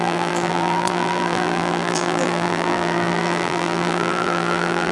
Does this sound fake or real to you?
fake